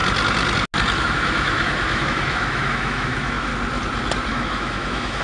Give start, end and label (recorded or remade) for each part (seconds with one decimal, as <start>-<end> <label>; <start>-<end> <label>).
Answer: 0.0-1.0 recorded; 1.0-3.5 remade; 3.5-4.3 recorded; 4.3-5.2 remade